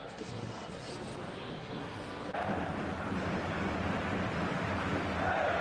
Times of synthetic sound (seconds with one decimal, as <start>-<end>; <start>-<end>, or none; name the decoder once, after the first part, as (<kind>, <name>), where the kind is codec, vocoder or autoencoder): 0.0-0.9 (codec, SNAC); 1.6-2.0